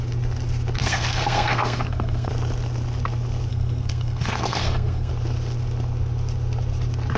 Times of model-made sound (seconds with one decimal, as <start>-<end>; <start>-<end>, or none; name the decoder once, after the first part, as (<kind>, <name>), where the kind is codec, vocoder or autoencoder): 0.8-2.3 (codec, SNAC); 3.5-5.1